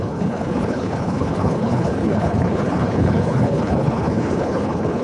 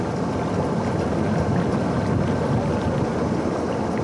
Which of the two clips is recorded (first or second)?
second